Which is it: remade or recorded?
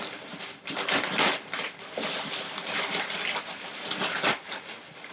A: remade